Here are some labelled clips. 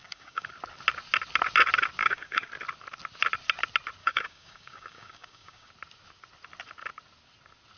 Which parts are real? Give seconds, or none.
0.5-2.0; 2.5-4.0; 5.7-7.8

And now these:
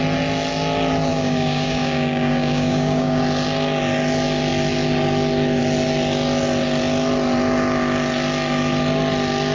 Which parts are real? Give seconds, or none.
0.0-1.1; 3.2-9.5